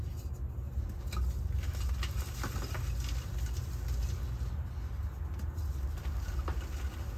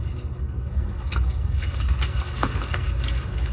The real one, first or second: first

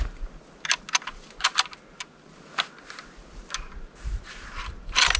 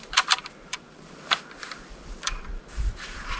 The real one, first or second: first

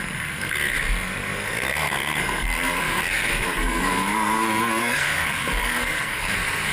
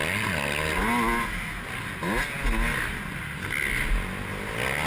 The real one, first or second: second